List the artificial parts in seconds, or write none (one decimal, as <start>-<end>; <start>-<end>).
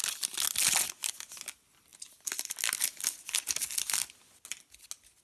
none